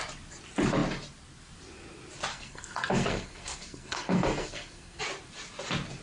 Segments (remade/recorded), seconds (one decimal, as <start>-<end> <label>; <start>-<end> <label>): 0.0-2.3 recorded; 2.3-5.0 remade; 5.0-6.0 recorded